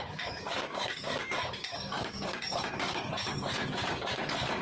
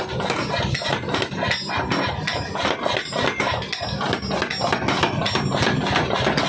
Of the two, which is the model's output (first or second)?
first